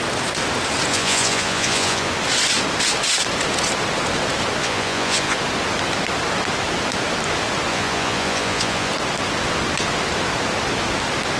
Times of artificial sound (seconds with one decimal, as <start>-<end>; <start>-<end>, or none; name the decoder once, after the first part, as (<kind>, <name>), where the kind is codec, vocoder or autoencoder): 0.9-2.1 (vocoder, Vocos); 4.6-5.4; 7.7-8.9